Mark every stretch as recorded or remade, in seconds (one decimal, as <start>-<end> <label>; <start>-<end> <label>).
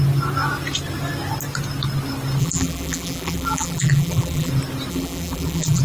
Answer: 0.0-2.4 recorded; 2.4-4.5 remade; 4.5-4.9 recorded; 4.9-5.8 remade